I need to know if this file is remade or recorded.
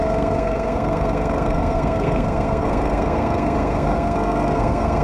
remade